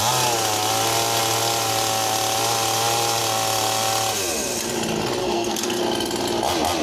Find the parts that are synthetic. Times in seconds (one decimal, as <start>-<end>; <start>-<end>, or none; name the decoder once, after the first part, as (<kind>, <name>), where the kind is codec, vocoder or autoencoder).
5.2-5.8 (codec, SNAC)